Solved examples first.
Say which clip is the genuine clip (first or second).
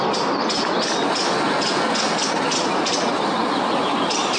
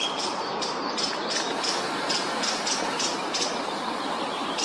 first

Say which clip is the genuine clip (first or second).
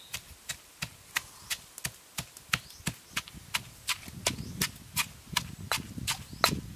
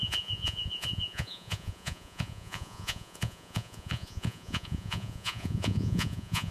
first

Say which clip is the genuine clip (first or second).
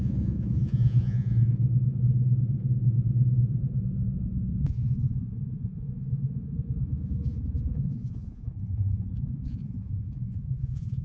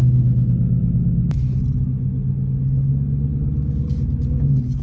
second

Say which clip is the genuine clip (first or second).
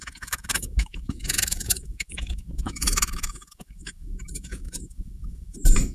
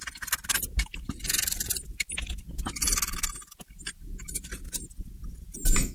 second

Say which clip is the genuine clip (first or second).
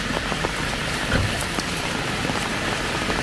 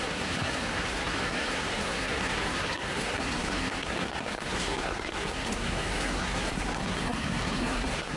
first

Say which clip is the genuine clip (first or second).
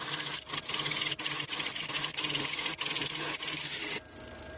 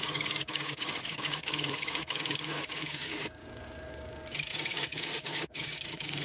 first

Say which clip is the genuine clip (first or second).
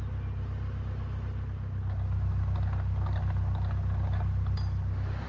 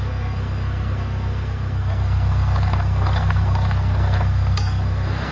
first